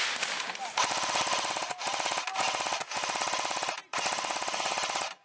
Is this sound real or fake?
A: real